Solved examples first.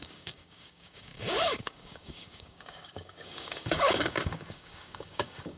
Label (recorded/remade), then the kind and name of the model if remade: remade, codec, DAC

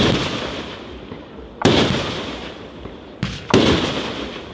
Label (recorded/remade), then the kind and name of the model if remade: recorded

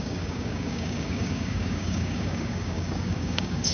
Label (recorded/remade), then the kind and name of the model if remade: remade, codec, DAC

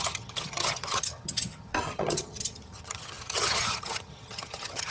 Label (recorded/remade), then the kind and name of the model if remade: remade, vocoder, HiFi-GAN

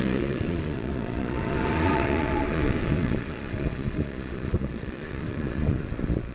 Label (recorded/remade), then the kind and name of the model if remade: remade, vocoder, Vocos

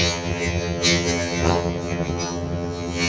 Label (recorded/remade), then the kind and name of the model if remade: remade, vocoder, HiFi-GAN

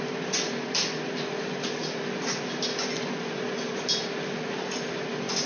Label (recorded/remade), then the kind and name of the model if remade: recorded